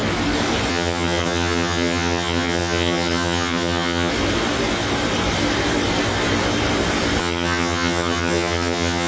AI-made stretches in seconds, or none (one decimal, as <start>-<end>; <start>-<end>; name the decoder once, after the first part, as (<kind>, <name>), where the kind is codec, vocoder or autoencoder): 0.7-4.1 (vocoder, HiFi-GAN); 7.2-9.1